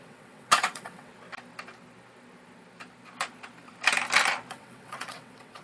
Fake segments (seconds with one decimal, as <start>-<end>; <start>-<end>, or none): 0.0-1.1; 4.5-5.6